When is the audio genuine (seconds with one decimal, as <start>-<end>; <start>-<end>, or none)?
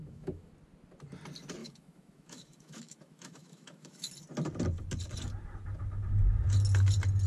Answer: 0.5-1.6; 4.1-7.3